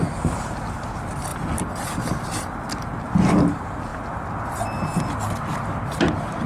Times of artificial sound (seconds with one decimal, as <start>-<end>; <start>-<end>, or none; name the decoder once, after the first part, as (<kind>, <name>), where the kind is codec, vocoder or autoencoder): 0.0-1.3 (vocoder, BigVGAN v2); 3.2-3.9; 5.8-6.5